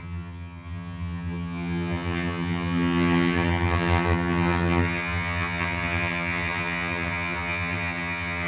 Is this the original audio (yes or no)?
no